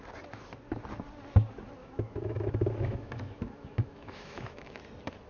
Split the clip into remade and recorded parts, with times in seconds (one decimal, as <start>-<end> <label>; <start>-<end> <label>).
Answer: 0.0-1.8 recorded; 1.8-4.8 remade; 4.8-5.3 recorded